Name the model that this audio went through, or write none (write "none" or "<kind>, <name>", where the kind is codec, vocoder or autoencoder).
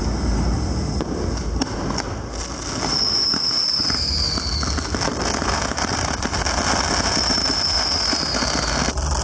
none